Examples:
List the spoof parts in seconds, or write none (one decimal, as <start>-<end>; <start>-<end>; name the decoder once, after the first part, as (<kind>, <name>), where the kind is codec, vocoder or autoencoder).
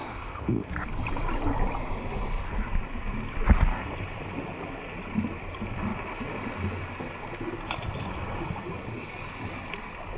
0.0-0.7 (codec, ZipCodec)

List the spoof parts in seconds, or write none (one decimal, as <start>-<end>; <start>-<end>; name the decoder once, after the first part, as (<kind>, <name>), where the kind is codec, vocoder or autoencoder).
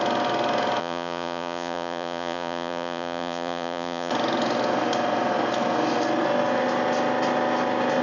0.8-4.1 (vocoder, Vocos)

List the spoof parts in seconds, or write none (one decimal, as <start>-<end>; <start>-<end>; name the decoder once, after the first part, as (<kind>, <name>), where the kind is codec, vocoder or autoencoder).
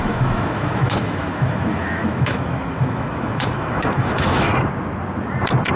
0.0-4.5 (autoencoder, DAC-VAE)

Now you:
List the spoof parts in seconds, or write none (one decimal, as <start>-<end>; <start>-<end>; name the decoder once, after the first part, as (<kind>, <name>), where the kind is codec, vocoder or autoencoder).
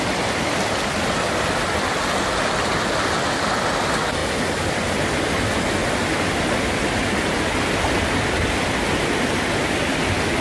none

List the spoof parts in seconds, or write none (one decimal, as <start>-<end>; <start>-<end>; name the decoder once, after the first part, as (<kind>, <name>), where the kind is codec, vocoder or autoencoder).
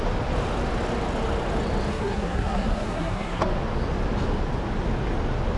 1.9-3.4 (codec, SNAC)